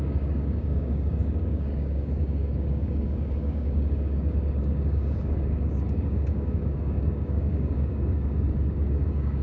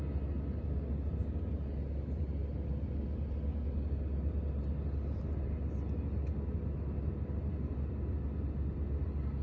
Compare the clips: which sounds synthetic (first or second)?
first